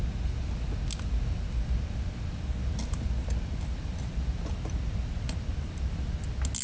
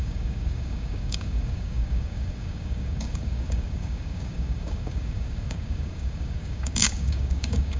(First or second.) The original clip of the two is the first